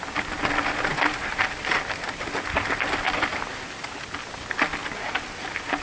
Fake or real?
real